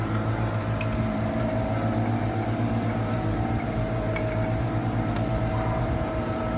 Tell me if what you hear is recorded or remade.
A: remade